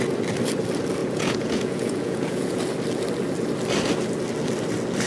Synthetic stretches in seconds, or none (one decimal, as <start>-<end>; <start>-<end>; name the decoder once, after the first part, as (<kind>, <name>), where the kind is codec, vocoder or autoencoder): 1.0-2.6 (vocoder, Vocos)